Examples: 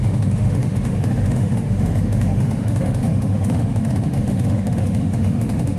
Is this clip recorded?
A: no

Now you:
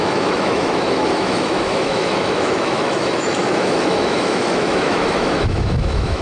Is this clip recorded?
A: no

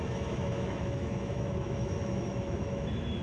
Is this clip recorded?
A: no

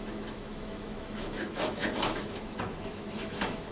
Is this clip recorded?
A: no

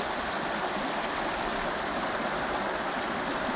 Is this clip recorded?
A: yes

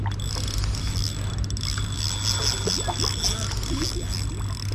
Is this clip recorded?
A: yes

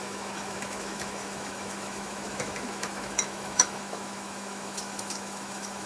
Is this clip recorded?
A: no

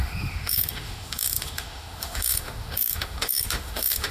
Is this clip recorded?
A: no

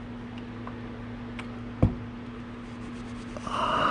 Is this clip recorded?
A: yes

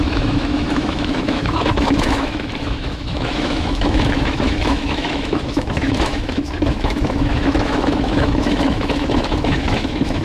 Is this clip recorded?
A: no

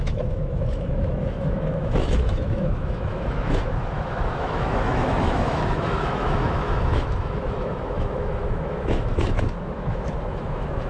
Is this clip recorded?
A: no